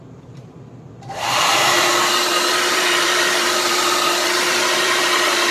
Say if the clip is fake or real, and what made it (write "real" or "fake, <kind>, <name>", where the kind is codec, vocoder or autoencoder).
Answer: fake, vocoder, BigVGAN v2